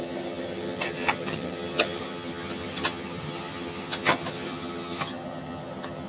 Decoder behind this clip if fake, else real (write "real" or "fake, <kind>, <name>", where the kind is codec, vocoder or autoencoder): fake, vocoder, HiFi-GAN